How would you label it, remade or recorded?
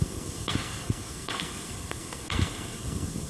remade